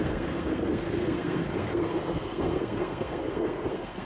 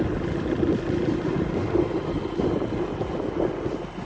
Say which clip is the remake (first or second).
first